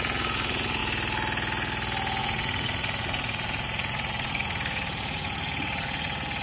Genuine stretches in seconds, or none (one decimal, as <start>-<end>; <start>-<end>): 0.8-2.2